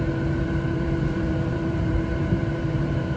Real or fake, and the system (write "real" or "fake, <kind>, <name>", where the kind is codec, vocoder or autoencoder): fake, vocoder, BigVGAN v2